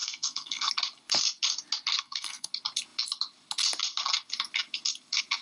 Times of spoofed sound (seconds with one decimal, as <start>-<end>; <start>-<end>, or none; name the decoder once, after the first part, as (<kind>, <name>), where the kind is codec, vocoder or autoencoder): 0.0-0.7 (codec, SNAC); 2.0-2.5